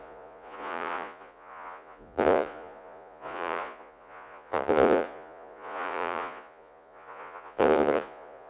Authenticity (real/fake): fake